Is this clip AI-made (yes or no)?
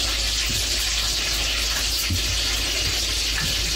no